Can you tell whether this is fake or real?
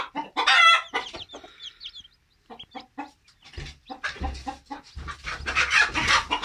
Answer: real